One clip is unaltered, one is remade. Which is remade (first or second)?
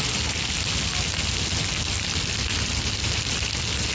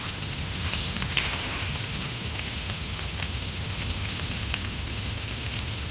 second